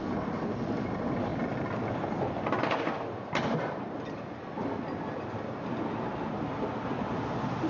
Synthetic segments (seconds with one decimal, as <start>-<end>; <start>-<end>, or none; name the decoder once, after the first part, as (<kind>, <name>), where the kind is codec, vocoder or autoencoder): none

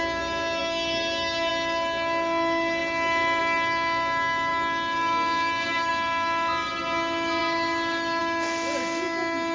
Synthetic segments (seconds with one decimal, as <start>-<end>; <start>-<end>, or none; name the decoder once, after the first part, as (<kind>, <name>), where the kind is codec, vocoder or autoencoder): 0.6-1.5 (codec, DAC)

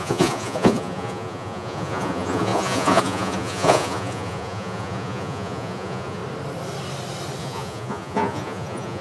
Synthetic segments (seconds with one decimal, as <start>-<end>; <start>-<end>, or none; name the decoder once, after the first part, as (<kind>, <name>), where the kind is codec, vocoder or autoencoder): 0.0-6.2 (vocoder, Vocos); 7.4-9.0

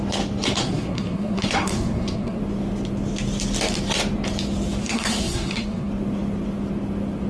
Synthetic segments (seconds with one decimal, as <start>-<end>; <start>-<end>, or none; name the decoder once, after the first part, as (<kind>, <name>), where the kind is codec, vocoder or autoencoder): 0.6-2.4 (codec, SNAC); 4.8-5.9

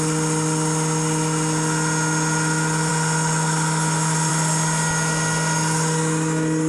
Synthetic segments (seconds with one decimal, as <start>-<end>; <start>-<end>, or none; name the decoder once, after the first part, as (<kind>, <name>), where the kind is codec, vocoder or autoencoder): none

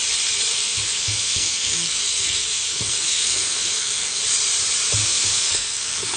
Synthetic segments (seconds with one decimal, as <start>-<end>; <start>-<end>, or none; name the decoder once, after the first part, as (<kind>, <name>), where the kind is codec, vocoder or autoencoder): 0.5-4.2 (codec, SNAC); 5.0-6.2

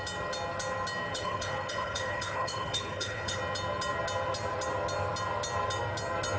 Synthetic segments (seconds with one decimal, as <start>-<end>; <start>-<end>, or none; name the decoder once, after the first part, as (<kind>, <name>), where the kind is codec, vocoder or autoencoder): 1.1-3.4 (codec, HILCodec)